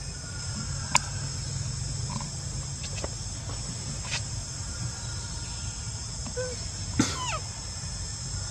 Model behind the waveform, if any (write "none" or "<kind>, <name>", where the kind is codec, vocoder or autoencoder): none